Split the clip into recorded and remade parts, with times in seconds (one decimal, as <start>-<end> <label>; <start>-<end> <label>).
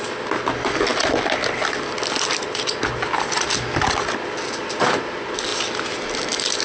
0.0-6.6 recorded